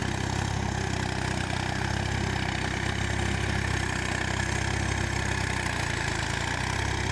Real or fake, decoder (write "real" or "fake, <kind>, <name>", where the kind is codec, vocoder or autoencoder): real